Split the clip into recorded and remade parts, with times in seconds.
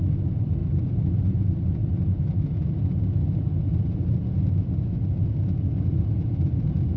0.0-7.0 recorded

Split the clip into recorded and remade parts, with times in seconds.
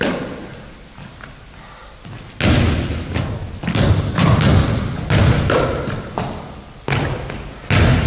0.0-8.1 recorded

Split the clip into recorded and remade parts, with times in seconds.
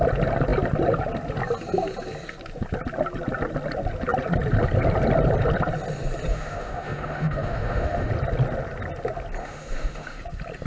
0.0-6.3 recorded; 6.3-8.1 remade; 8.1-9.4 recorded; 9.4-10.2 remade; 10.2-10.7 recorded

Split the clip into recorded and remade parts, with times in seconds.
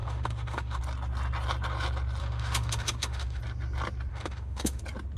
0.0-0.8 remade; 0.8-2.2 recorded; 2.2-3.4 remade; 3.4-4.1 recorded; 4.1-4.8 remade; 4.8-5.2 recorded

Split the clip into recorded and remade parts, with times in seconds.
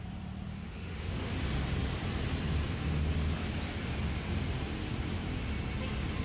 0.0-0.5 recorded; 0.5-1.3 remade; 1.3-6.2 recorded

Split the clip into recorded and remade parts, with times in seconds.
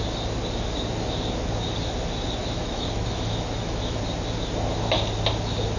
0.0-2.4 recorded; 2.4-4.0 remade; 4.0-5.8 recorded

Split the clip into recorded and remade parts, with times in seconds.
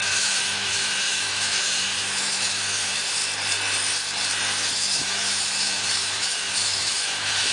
0.0-3.2 remade; 3.2-4.7 recorded; 4.7-7.5 remade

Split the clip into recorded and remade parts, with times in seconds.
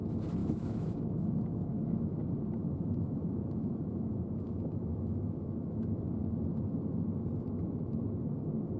0.0-0.4 recorded; 0.4-2.2 remade; 2.2-2.6 recorded; 2.6-6.0 remade; 6.0-8.8 recorded